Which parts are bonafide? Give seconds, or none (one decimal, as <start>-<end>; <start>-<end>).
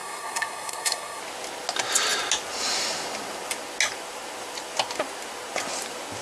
1.2-6.2